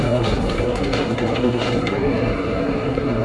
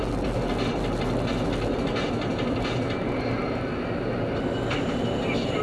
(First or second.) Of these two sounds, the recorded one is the second